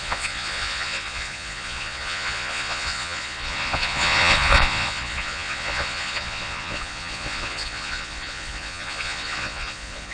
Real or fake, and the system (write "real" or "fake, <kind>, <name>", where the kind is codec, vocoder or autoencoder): fake, vocoder, Vocos